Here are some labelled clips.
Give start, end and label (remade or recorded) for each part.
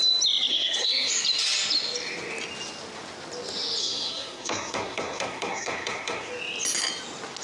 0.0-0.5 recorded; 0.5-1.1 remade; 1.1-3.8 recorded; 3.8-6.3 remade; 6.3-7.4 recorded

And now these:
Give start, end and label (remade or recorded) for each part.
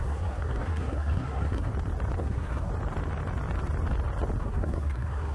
0.0-1.7 remade; 1.7-2.2 recorded; 2.2-2.7 remade; 2.7-4.4 recorded; 4.4-5.3 remade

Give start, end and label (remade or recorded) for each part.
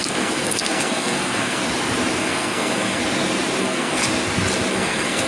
0.0-1.6 remade; 1.6-2.2 recorded; 2.2-3.0 remade; 3.0-3.6 recorded; 3.6-4.0 remade; 4.0-4.7 recorded; 4.7-5.3 remade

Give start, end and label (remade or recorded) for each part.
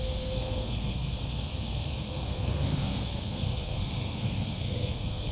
0.0-5.3 remade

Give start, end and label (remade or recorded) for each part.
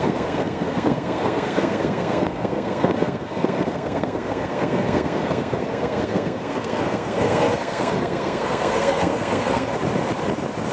0.0-9.7 remade; 9.7-10.7 recorded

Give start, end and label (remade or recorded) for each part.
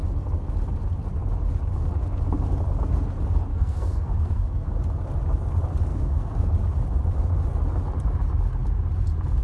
0.0-3.5 recorded; 3.5-4.7 remade; 4.7-5.9 recorded; 5.9-6.5 remade; 6.5-9.4 recorded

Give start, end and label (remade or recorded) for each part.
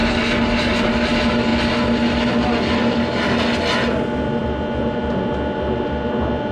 0.0-6.5 recorded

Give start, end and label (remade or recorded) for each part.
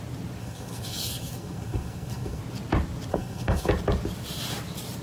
0.0-0.4 recorded; 0.4-2.4 remade; 2.4-3.1 recorded; 3.1-3.7 remade; 3.7-5.0 recorded